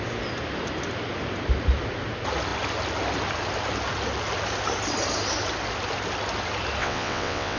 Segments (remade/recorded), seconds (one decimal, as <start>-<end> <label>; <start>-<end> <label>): 0.0-6.8 recorded; 6.8-7.6 remade